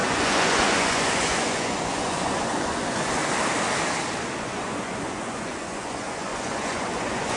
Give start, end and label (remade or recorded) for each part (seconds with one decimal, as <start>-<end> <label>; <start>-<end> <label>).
0.0-3.2 remade; 3.2-4.4 recorded; 4.4-7.4 remade